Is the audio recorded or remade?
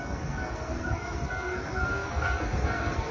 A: remade